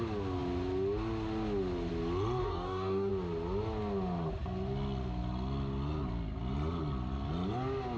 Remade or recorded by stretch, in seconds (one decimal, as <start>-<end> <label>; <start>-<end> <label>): 0.0-2.4 recorded; 2.4-3.1 remade; 3.1-8.0 recorded